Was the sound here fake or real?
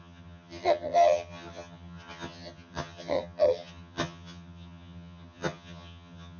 fake